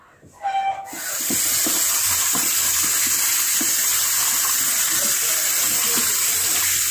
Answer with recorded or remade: recorded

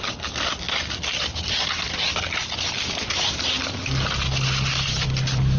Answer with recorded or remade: recorded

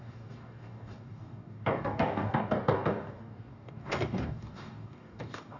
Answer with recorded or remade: remade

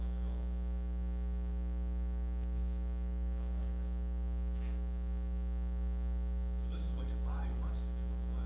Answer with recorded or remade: remade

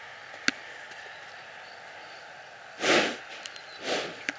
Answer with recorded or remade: recorded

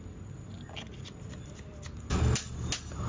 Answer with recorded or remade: recorded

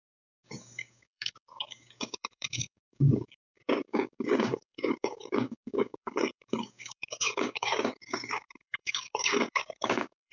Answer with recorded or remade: remade